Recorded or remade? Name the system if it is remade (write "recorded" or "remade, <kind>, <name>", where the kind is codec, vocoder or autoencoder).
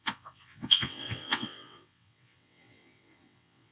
remade, vocoder, WaveNeXt